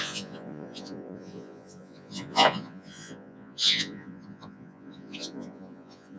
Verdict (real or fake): fake